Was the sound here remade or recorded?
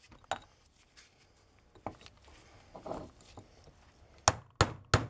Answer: recorded